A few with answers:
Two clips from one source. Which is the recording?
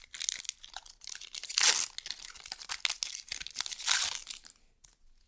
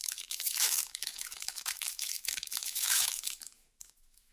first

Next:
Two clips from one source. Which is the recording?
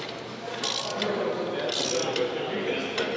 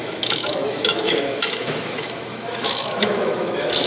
first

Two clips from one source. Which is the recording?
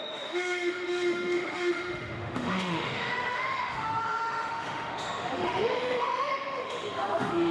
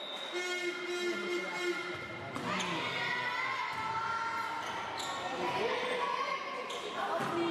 second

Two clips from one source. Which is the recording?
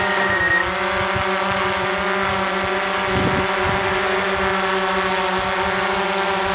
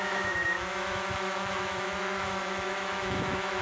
first